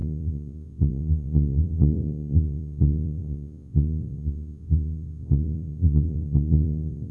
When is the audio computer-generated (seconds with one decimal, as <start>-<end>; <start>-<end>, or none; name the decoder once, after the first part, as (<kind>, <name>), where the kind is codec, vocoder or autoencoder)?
0.0-7.1 (vocoder, Vocos)